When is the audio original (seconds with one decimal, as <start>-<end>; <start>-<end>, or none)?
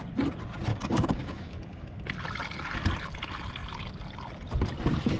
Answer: 0.0-0.7; 2.0-5.2